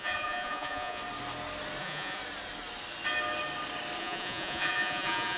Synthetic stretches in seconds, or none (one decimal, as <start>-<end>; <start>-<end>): 0.0-1.0; 1.8-2.2; 4.0-5.4